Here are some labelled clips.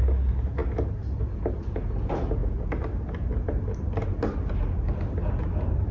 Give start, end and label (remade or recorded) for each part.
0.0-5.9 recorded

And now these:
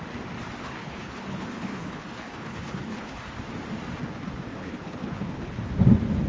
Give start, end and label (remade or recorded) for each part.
0.0-0.6 recorded; 0.6-3.2 remade; 3.2-4.6 recorded; 4.6-5.6 remade; 5.6-6.3 recorded